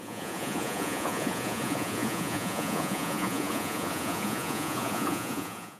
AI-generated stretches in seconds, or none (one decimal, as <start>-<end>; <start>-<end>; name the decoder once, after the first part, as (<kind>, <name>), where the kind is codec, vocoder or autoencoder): 0.0-5.8 (vocoder, Vocos)